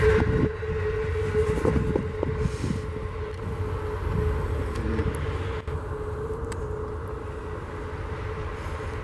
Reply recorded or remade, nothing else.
recorded